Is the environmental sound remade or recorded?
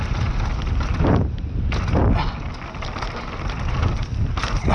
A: recorded